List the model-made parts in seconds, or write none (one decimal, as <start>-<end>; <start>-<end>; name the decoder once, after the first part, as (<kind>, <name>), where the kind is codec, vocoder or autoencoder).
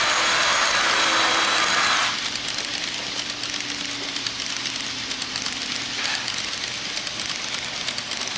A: 2.0-3.4 (vocoder, BigVGAN v2)